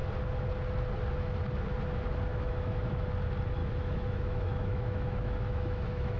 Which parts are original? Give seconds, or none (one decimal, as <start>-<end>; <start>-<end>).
0.0-2.3; 3.1-3.6